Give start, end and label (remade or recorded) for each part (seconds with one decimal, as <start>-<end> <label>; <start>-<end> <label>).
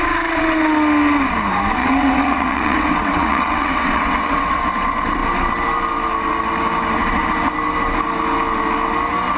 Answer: 0.0-1.8 recorded; 1.8-4.6 remade; 4.6-9.4 recorded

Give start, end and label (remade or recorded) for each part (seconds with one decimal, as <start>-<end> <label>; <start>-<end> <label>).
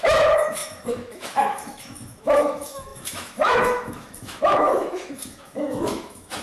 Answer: 0.0-6.4 remade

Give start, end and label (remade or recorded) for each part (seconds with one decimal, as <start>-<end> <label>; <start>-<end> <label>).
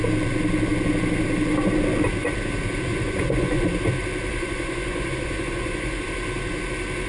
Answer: 0.0-2.9 recorded; 2.9-3.6 remade; 3.6-4.3 recorded; 4.3-6.0 remade; 6.0-7.1 recorded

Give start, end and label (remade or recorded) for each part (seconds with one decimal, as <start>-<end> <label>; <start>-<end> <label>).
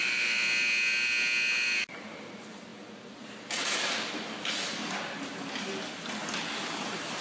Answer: 0.0-7.2 recorded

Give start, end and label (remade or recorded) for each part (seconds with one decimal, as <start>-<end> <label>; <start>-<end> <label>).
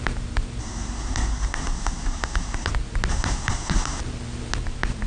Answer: 0.0-0.6 recorded; 0.6-2.7 remade; 2.7-3.1 recorded; 3.1-4.0 remade; 4.0-5.1 recorded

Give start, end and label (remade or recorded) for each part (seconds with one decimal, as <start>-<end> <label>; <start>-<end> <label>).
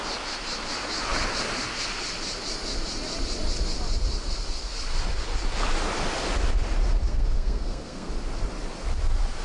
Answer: 0.0-7.1 recorded; 7.1-8.1 remade; 8.1-9.4 recorded